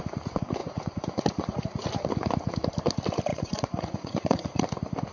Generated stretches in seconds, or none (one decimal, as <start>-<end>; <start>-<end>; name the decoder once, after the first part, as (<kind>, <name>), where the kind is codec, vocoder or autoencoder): 0.6-1.6 (vocoder, Vocos); 3.3-4.6